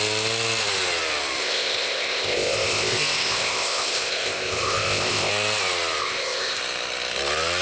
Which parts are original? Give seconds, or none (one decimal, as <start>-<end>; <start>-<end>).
0.0-1.4; 5.3-6.0; 6.6-7.6